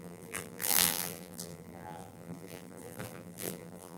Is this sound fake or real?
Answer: fake